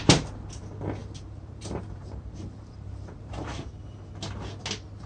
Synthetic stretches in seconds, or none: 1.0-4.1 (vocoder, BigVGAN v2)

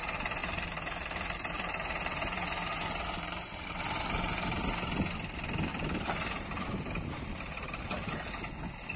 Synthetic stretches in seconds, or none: 0.4-4.6 (vocoder, BigVGAN v2); 5.7-8.1

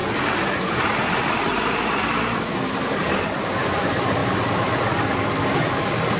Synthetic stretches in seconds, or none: 0.0-3.2 (vocoder, BigVGAN v2); 4.2-6.2

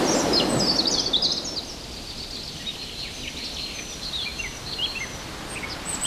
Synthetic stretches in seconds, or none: none

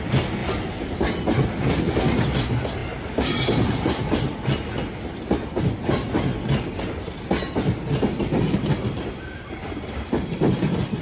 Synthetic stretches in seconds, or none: 0.4-1.0 (vocoder, BigVGAN v2); 9.6-10.3

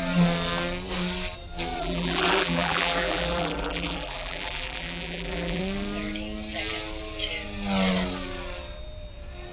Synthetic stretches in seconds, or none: 1.8-5.6 (vocoder, BigVGAN v2)

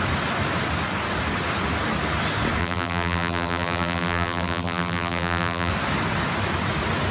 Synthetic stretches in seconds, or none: 2.6-5.7 (vocoder, BigVGAN v2)